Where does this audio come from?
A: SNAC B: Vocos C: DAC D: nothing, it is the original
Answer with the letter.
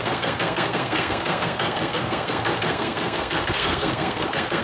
A